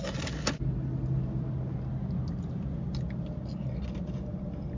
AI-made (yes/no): no